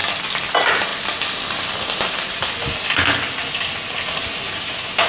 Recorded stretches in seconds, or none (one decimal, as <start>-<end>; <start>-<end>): 0.0-5.1